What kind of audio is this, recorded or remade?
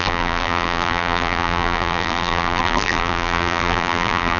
remade